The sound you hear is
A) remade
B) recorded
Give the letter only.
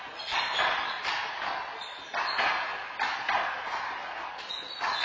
B